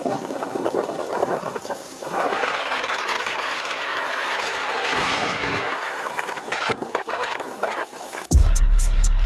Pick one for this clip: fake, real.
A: fake